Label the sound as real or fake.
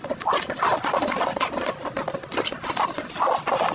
real